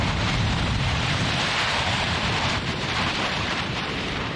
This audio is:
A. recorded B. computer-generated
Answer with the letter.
B